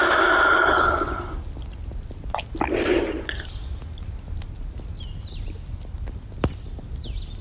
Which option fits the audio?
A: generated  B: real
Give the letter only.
B